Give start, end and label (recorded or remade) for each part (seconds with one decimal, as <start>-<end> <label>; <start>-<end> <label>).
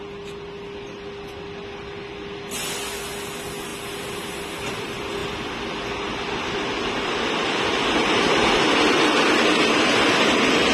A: 0.0-10.7 recorded